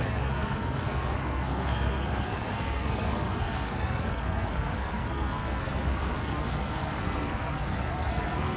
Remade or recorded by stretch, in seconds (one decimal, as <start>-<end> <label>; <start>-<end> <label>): 0.0-8.6 remade